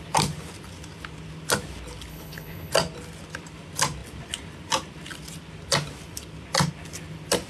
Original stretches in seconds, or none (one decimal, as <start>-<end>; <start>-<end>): 0.0-2.1; 2.7-7.5